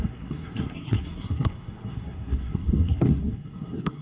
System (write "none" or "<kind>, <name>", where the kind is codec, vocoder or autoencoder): codec, SNAC